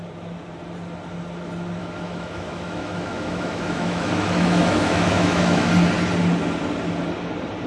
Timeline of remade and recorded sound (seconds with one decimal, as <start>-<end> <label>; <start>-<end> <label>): 0.0-1.8 recorded; 1.8-5.7 remade; 5.7-7.7 recorded